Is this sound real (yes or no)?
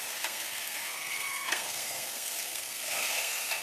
no